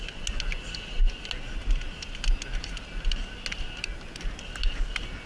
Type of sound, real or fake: real